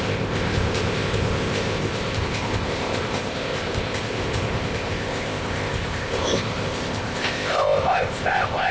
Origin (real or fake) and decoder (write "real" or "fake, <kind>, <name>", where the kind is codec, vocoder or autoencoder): fake, codec, ZipCodec